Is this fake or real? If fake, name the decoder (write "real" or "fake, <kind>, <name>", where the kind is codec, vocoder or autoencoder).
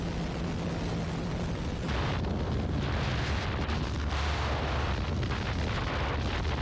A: real